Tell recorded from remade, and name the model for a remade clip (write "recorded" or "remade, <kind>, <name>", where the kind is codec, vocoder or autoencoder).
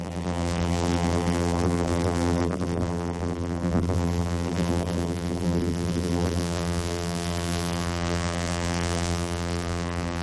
remade, vocoder, BigVGAN v2